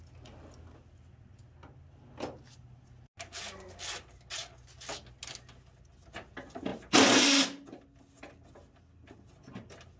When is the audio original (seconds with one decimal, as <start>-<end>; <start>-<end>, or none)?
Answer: 0.0-10.0